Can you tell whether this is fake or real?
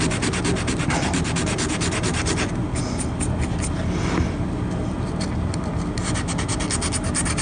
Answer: real